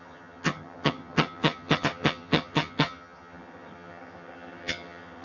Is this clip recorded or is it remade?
remade